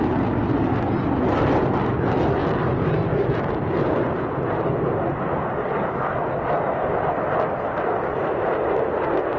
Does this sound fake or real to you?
real